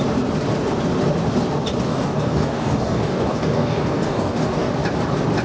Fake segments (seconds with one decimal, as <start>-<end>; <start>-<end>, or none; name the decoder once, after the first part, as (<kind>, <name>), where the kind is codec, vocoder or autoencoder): 1.9-4.7 (codec, DAC)